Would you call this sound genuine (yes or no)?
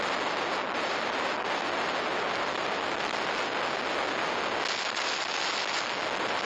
yes